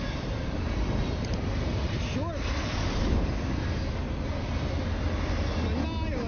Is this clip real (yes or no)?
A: yes